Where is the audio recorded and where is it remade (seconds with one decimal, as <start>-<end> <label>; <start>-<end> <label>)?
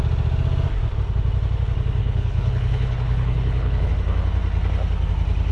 0.0-2.0 recorded; 2.0-3.9 remade; 3.9-5.5 recorded